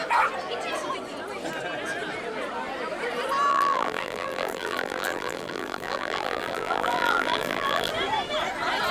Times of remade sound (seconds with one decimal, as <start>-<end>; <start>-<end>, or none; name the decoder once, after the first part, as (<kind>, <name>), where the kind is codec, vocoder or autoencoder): 3.5-7.9 (vocoder, BigVGAN v2)